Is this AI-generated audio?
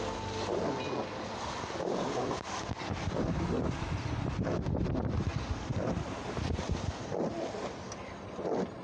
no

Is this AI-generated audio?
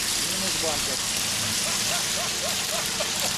no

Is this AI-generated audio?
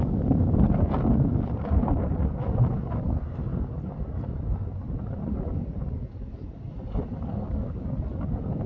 no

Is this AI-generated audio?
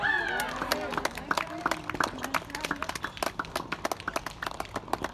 no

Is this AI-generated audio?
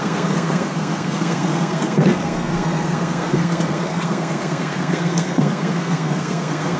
yes